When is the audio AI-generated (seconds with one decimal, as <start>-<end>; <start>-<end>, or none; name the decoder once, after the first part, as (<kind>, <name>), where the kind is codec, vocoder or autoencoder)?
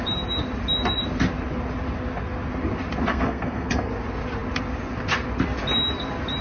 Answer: 3.1-3.9 (codec, SNAC)